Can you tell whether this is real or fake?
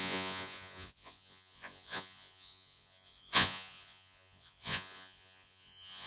fake